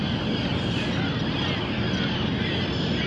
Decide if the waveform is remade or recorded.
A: recorded